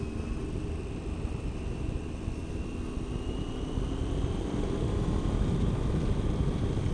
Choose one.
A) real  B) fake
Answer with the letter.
A